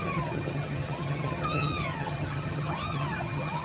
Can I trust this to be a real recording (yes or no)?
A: no